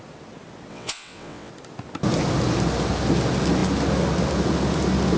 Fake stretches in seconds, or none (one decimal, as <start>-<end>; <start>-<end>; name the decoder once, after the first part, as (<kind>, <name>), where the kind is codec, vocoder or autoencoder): 0.7-1.5 (vocoder, WaveNeXt)